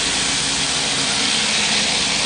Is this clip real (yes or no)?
yes